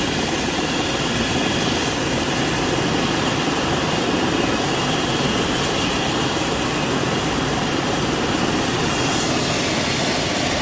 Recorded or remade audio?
recorded